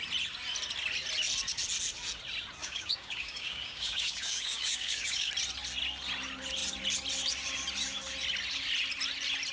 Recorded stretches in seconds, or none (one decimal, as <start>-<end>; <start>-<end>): 0.0-2.6; 5.3-9.5